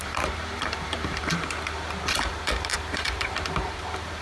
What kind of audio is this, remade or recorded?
remade